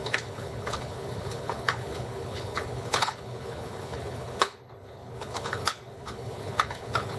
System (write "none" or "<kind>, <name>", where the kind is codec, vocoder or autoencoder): codec, HILCodec